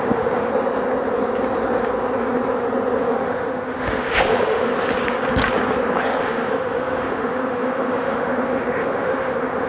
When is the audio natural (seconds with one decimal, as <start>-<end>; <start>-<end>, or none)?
0.5-3.0; 4.7-6.2